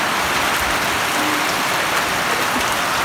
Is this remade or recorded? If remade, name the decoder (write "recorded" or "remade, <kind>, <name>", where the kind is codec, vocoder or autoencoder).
remade, vocoder, BigVGAN v2